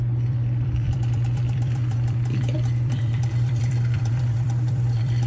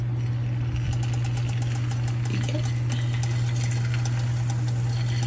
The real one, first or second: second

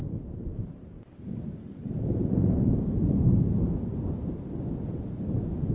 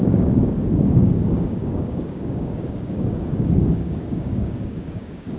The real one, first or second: first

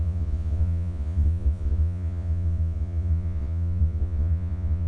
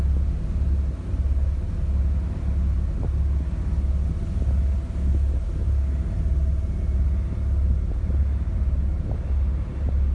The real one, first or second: second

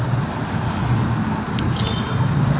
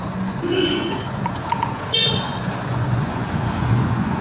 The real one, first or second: first